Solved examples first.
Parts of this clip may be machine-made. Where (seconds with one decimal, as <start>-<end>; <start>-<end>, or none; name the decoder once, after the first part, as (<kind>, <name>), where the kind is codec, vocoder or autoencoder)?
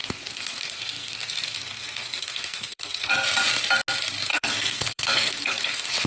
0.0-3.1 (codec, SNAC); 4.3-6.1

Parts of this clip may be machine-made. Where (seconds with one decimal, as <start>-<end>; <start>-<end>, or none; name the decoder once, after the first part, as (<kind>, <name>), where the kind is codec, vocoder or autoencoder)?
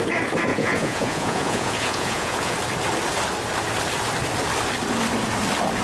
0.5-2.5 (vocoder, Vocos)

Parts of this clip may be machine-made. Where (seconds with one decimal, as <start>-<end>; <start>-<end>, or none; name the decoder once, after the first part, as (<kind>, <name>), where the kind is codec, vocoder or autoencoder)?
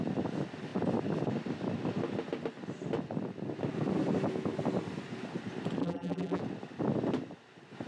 5.8-6.4 (vocoder, BigVGAN v2)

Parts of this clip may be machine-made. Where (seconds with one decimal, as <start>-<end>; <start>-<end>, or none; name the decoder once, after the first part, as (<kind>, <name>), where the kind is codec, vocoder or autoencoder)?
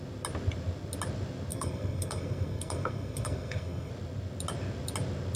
1.5-3.9 (codec, SNAC)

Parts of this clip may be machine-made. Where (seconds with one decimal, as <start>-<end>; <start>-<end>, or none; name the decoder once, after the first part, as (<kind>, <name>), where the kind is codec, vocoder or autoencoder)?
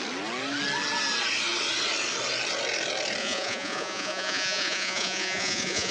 3.2-5.9 (vocoder, Vocos)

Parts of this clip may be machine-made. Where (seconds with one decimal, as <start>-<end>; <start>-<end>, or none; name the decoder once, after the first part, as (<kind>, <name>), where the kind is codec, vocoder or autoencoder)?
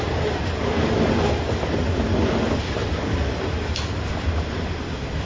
none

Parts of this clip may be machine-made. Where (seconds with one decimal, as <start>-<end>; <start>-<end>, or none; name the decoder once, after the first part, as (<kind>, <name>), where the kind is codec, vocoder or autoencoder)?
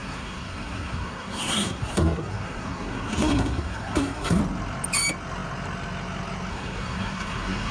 0.0-4.4 (codec, SNAC); 6.5-7.7